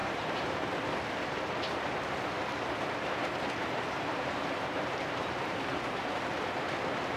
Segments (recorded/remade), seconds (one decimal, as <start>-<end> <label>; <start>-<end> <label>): 0.0-0.5 remade; 0.5-3.2 recorded; 3.2-6.8 remade; 6.8-7.2 recorded